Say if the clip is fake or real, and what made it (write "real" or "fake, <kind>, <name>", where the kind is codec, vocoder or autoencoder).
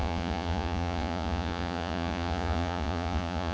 fake, vocoder, Vocos